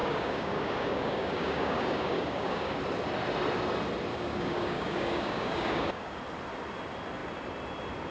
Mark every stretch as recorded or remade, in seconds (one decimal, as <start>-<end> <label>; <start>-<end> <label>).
0.0-2.8 remade; 2.8-4.1 recorded; 4.1-6.2 remade; 6.2-8.1 recorded